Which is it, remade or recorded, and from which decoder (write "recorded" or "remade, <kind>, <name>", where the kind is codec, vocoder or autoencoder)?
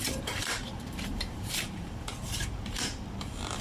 remade, vocoder, BigVGAN v2